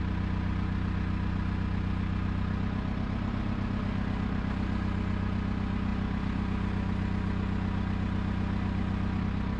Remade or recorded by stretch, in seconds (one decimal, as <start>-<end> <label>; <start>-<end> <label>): 0.0-9.6 recorded